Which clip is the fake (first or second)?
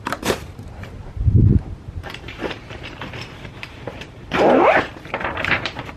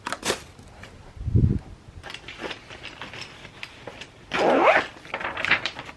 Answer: first